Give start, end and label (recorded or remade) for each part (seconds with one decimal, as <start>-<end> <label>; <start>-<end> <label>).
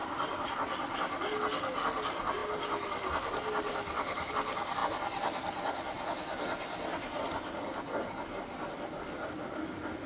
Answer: 0.0-10.1 recorded